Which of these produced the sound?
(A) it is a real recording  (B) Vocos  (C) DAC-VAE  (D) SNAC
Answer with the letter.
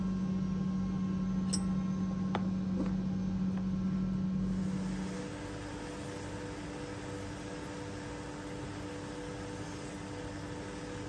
A